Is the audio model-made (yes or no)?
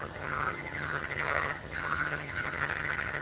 yes